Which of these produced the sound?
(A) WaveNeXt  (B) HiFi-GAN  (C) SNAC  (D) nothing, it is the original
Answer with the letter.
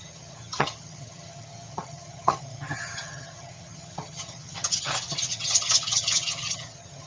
B